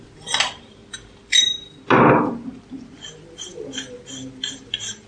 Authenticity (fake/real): real